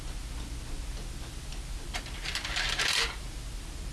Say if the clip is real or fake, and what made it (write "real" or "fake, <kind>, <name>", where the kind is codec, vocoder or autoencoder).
real